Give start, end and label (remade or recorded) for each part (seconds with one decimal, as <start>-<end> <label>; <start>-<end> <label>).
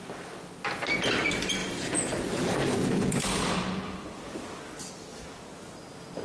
0.0-1.6 recorded; 1.6-4.9 remade; 4.9-6.2 recorded